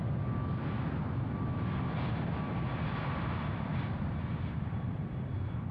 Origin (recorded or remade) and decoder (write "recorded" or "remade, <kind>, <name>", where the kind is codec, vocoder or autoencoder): recorded